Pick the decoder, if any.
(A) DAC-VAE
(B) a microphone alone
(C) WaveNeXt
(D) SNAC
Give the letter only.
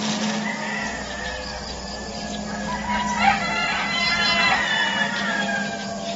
B